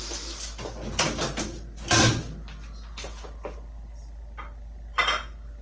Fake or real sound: real